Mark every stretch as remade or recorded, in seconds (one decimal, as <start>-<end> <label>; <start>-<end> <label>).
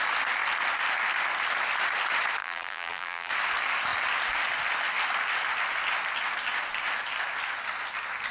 0.0-2.4 recorded; 2.4-3.3 remade; 3.3-8.3 recorded